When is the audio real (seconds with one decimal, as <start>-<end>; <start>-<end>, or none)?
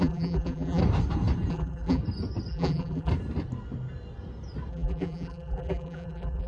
0.8-1.5; 2.0-2.5; 3.1-4.7